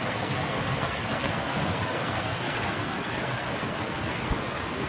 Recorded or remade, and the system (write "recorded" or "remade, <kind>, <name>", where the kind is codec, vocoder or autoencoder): remade, codec, SNAC